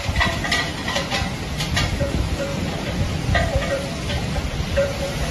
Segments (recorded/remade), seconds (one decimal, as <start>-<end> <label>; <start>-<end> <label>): 0.0-5.3 remade